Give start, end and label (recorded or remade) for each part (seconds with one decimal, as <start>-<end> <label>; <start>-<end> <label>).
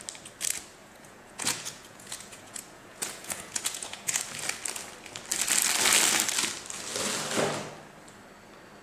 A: 0.0-0.8 recorded; 0.8-4.2 remade; 4.2-8.8 recorded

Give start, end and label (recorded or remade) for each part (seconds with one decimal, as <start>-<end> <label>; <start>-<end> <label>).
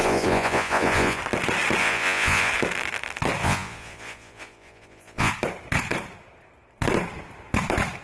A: 0.0-1.2 remade; 1.2-1.8 recorded; 1.8-2.5 remade; 2.5-3.4 recorded; 3.4-5.3 remade; 5.3-8.0 recorded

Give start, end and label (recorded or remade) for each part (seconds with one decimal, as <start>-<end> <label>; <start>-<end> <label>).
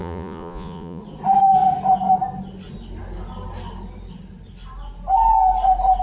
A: 0.0-1.0 remade; 1.0-6.0 recorded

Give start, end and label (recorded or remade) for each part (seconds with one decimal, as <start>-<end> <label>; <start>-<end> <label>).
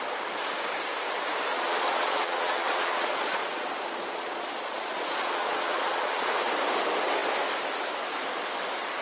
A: 0.0-1.5 recorded; 1.5-6.3 remade; 6.3-9.0 recorded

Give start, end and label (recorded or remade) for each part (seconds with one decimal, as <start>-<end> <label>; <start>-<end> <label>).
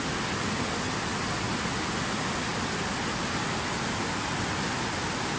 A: 0.0-5.4 recorded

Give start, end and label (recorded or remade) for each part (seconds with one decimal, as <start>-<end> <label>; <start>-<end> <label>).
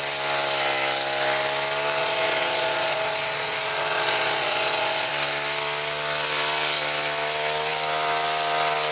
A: 0.0-2.0 recorded; 2.0-5.1 remade; 5.1-8.9 recorded